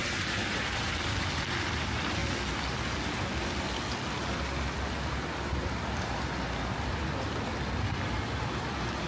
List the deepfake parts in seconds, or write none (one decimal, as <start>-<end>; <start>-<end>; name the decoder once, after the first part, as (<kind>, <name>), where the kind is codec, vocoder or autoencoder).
none